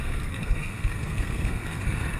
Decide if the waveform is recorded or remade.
remade